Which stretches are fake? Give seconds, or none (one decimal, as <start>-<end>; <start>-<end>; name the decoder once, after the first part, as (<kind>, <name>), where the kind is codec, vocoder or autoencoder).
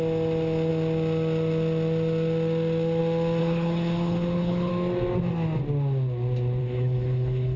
3.4-4.7 (codec, HILCodec); 6.6-7.6